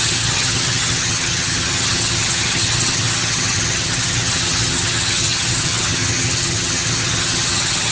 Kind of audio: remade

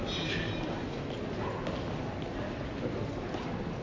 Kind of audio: recorded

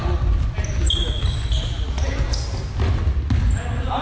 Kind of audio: recorded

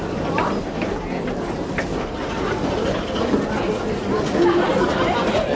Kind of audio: recorded